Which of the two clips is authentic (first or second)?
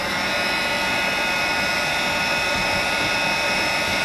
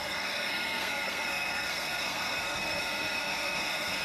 first